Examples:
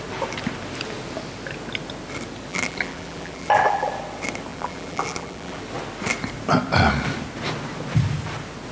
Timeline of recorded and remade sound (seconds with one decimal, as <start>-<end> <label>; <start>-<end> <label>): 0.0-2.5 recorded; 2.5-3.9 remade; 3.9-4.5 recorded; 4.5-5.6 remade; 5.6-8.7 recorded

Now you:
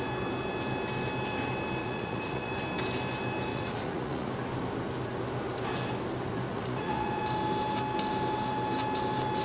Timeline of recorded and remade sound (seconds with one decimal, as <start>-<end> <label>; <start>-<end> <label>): 0.0-1.8 recorded; 1.8-2.5 remade; 2.5-3.5 recorded; 3.5-4.3 remade; 4.3-6.5 recorded; 6.5-7.2 remade; 7.2-9.4 recorded

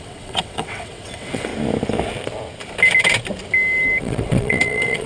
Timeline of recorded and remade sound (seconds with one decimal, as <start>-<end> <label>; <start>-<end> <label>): 0.0-1.5 remade; 1.5-4.0 recorded; 4.0-5.1 remade

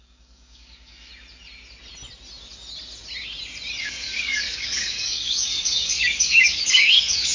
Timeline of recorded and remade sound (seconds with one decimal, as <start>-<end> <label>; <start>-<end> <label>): 0.0-1.1 remade; 1.1-3.8 recorded; 3.8-7.3 remade

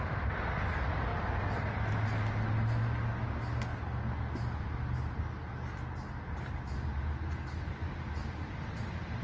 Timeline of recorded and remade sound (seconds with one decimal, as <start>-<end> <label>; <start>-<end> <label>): 0.0-8.2 recorded; 8.2-9.2 remade

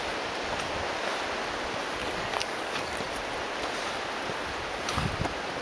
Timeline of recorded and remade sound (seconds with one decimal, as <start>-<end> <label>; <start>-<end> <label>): 0.0-2.0 recorded; 2.0-3.0 remade; 3.0-5.6 recorded

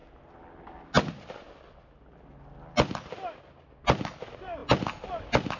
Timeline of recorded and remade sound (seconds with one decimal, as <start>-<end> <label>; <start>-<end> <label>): 0.0-5.6 recorded

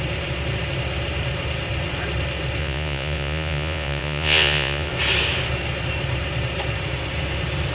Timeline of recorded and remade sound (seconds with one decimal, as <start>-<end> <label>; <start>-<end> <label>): 0.0-2.6 recorded; 2.6-4.9 remade; 4.9-7.7 recorded